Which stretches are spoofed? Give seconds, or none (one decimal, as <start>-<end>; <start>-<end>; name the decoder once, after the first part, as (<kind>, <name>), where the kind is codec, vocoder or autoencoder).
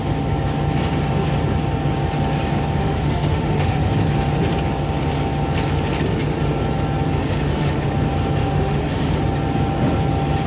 2.8-3.9 (autoencoder, DAC-VAE); 7.2-7.9; 8.4-9.2